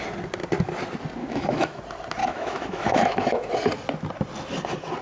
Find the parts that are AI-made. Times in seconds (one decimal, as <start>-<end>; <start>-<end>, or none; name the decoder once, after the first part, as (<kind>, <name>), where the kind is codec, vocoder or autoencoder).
1.2-1.8 (autoencoder, DAC-VAE); 2.2-3.5